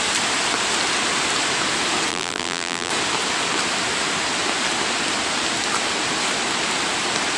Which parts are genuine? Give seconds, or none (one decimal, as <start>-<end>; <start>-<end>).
0.0-2.1; 2.9-7.4